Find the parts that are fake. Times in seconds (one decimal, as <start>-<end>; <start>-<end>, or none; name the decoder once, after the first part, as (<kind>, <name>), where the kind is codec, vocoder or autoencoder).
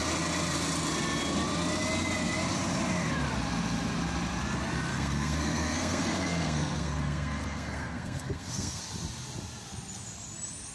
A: 4.9-8.8 (codec, SNAC)